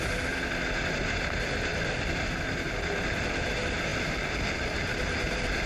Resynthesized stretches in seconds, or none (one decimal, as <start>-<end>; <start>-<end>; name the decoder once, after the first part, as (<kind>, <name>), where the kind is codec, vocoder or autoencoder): 1.7-2.5 (vocoder, BigVGAN v2); 3.9-4.4